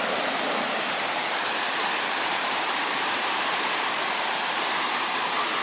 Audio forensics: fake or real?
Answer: fake